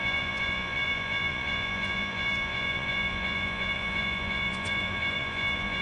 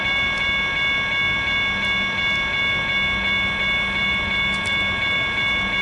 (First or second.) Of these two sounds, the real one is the second